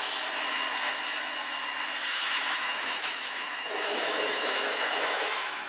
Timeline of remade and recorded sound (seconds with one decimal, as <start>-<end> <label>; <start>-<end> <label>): 0.0-2.1 recorded; 2.1-5.7 remade